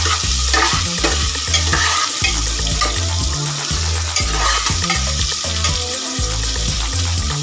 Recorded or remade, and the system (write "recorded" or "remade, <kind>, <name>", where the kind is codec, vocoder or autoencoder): recorded